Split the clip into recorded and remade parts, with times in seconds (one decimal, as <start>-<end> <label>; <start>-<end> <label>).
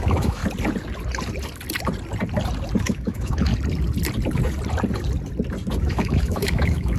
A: 0.0-0.4 remade; 0.4-2.8 recorded; 2.8-3.5 remade; 3.5-5.8 recorded; 5.8-7.0 remade